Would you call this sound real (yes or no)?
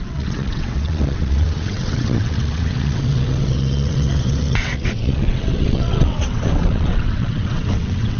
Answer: no